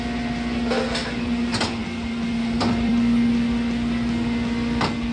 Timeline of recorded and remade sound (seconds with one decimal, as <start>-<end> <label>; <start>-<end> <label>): 0.0-1.8 recorded; 1.8-2.9 remade; 2.9-5.1 recorded